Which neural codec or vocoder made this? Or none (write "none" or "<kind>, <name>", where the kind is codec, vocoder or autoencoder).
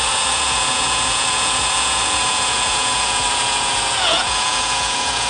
vocoder, Vocos